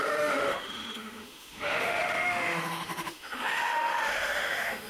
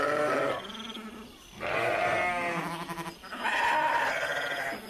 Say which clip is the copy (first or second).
first